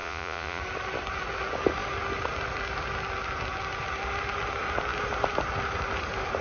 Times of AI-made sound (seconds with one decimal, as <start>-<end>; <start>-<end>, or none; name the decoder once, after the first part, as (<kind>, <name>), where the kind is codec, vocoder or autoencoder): 0.0-0.6 (vocoder, Vocos)